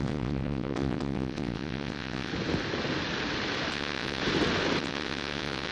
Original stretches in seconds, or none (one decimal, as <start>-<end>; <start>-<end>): 2.3-3.7; 4.2-4.8